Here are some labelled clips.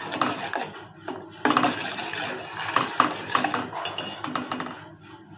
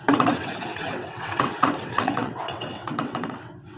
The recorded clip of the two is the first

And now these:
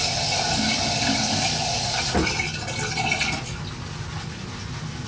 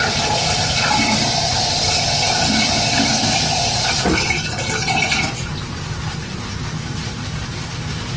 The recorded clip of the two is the first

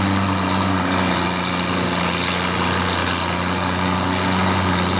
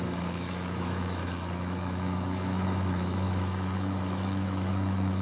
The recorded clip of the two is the first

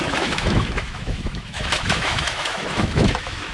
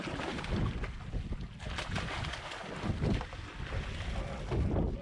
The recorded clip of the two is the second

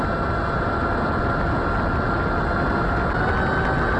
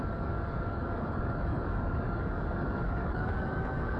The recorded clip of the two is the first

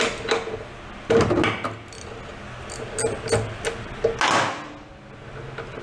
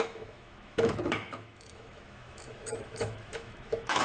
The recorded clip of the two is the first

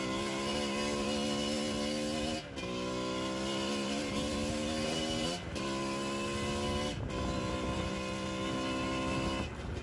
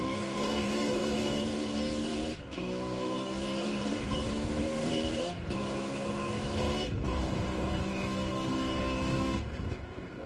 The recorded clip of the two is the first